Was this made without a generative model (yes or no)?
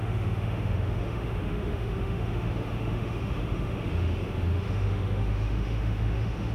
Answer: no